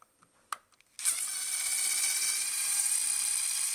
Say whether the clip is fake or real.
real